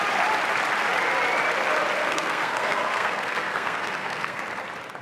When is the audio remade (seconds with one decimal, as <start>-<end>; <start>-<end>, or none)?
2.0-4.4